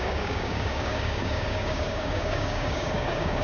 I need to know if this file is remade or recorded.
remade